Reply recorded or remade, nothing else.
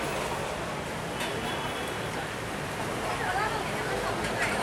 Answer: recorded